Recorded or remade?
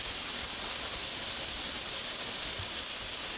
recorded